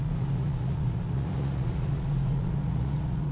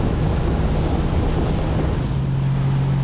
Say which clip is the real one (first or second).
second